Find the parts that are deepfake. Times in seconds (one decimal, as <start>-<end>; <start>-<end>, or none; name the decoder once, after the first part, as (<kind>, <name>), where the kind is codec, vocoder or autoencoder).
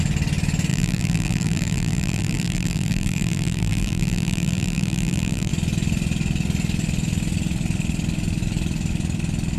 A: 0.7-5.5 (vocoder, BigVGAN v2)